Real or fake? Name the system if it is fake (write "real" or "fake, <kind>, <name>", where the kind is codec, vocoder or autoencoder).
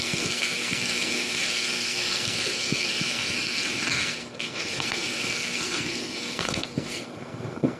fake, codec, SNAC